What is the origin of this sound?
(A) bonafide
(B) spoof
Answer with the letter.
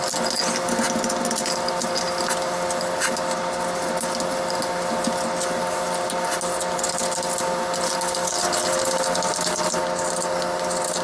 A